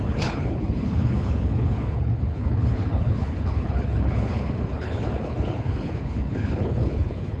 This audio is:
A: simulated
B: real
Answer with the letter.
A